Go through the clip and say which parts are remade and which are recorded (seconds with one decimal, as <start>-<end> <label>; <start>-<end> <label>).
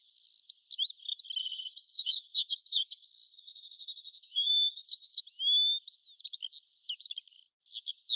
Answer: 0.0-1.4 recorded; 1.4-5.2 remade; 5.2-8.2 recorded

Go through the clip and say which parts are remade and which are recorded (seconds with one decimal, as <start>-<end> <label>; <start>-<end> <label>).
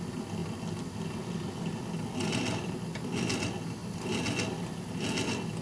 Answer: 0.0-5.6 recorded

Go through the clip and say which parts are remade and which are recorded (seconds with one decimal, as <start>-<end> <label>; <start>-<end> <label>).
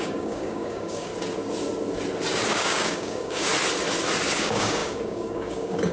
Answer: 0.0-1.1 remade; 1.1-2.5 recorded; 2.5-3.5 remade; 3.5-4.3 recorded; 4.3-5.9 remade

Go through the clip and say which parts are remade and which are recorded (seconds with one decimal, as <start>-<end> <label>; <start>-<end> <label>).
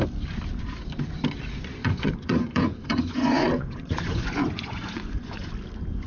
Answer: 0.0-1.8 recorded; 1.8-5.5 remade; 5.5-6.1 recorded